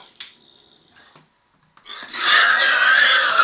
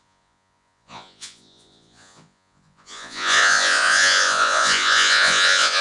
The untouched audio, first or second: first